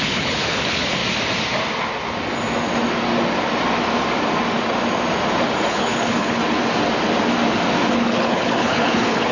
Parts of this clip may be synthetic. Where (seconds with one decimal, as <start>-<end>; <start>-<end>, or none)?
0.0-1.0; 5.7-6.4; 7.9-9.3